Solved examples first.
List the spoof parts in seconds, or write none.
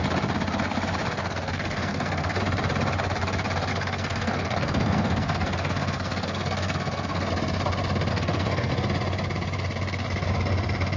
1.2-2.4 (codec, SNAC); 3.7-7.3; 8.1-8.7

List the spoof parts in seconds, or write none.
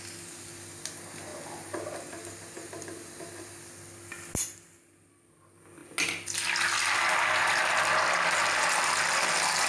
none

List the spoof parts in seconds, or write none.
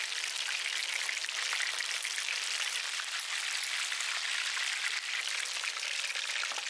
none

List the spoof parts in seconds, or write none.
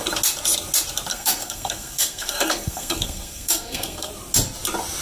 1.1-4.1 (codec, SNAC)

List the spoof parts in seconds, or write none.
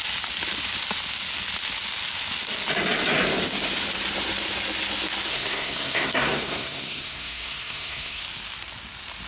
5.3-8.2 (codec, SNAC)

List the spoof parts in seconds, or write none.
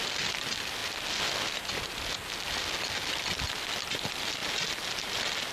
none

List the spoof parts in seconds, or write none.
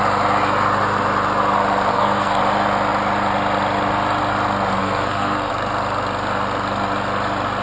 1.9-2.4 (codec, SNAC); 4.8-5.5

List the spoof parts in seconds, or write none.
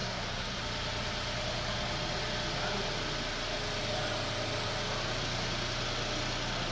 0.0-0.6 (codec, SNAC)